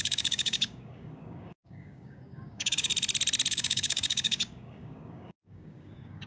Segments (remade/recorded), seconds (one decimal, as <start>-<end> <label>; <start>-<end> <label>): 0.0-2.9 remade; 2.9-3.5 recorded; 3.5-6.3 remade